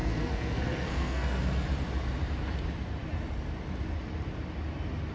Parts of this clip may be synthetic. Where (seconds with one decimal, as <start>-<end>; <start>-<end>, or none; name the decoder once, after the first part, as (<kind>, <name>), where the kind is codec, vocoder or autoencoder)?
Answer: 0.0-1.4 (codec, SNAC)